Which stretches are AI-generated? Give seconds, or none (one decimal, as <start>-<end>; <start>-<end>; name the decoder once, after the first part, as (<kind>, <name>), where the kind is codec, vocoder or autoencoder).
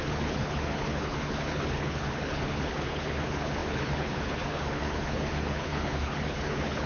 0.0-6.9 (codec, HILCodec)